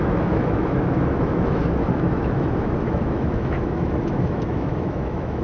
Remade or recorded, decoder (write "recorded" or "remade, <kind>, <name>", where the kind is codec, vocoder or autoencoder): remade, autoencoder, DAC-VAE